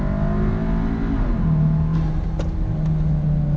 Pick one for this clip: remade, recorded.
recorded